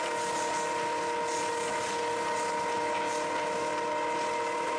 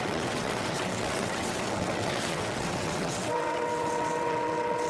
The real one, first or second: first